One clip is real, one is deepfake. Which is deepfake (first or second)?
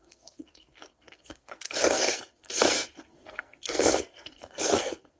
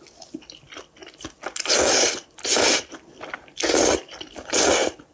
first